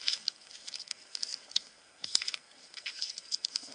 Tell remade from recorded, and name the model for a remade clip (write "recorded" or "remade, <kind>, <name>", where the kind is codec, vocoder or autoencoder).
remade, codec, SNAC